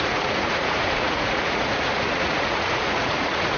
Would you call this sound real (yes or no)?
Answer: no